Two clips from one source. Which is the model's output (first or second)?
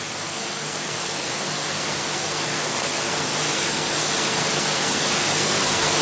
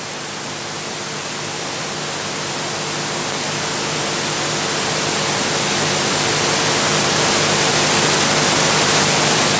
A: first